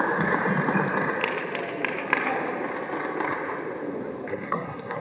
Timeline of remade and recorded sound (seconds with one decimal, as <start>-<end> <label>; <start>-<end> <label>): 0.0-4.3 recorded; 4.3-5.0 remade